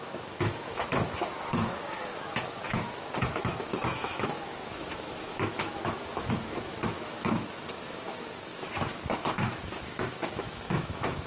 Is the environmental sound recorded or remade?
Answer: remade